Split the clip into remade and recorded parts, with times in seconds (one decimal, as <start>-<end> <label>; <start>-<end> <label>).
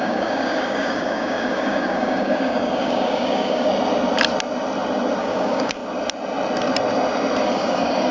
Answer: 0.0-3.7 remade; 3.7-5.2 recorded; 5.2-5.8 remade; 5.8-7.5 recorded; 7.5-8.1 remade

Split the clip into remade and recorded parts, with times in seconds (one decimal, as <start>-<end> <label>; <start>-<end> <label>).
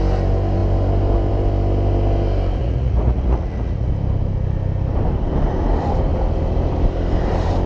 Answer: 0.0-2.6 recorded; 2.6-3.9 remade; 3.9-7.7 recorded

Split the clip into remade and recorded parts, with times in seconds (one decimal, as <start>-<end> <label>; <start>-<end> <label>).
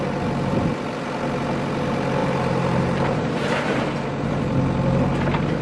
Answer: 0.0-2.2 recorded; 2.2-3.8 remade; 3.8-5.6 recorded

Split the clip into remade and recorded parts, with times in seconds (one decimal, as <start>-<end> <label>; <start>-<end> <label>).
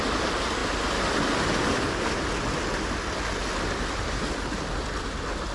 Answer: 0.0-5.5 recorded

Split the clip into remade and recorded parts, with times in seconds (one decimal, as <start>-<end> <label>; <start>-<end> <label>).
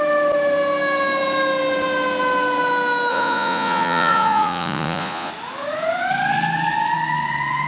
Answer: 0.0-3.1 recorded; 3.1-5.3 remade; 5.3-7.7 recorded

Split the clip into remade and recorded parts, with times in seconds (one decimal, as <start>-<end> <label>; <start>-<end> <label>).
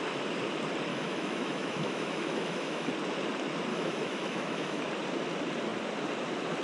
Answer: 0.0-0.9 recorded; 0.9-2.9 remade; 2.9-3.7 recorded; 3.7-4.8 remade; 4.8-6.6 recorded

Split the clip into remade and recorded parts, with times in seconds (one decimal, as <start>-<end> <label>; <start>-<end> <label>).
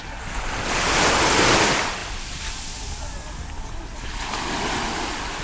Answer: 0.0-5.4 recorded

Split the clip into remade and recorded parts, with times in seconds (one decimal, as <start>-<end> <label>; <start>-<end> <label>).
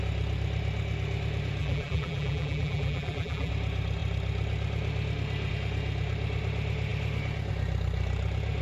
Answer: 0.0-1.6 recorded; 1.6-3.5 remade; 3.5-8.6 recorded